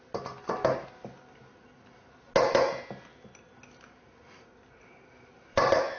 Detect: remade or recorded recorded